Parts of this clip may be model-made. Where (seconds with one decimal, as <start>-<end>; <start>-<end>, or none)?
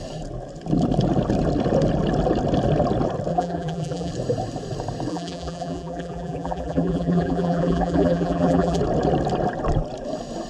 3.3-4.1; 5.1-8.8